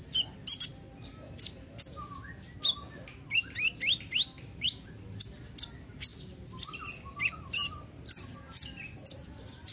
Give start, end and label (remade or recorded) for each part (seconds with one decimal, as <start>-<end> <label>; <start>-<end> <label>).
0.0-9.7 recorded